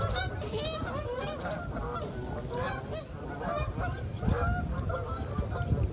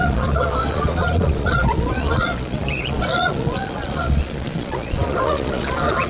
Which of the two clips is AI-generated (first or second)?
second